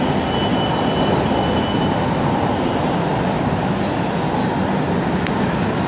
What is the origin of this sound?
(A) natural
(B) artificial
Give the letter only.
A